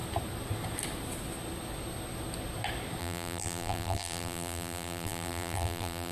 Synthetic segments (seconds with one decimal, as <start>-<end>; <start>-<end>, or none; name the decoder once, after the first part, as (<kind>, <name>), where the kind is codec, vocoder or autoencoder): 3.0-6.1 (vocoder, BigVGAN v2)